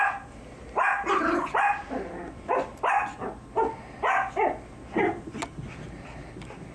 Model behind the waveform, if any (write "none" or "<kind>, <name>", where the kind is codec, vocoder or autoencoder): none